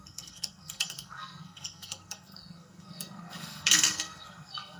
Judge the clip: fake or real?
fake